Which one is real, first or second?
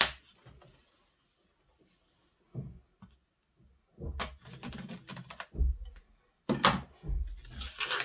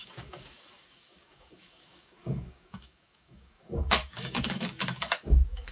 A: first